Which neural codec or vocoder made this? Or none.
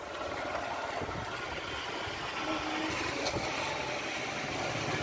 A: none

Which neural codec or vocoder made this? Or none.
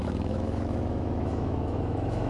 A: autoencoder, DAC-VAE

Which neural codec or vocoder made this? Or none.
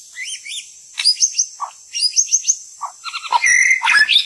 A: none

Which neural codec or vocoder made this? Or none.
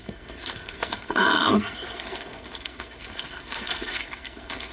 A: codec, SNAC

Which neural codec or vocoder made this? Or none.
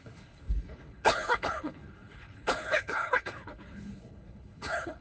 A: codec, HILCodec